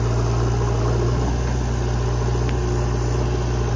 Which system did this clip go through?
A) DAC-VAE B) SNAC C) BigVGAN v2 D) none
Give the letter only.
D